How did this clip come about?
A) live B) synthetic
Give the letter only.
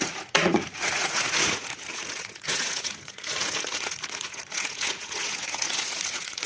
B